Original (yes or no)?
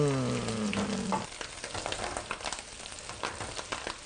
yes